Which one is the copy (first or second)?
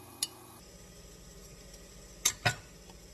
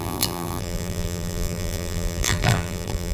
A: second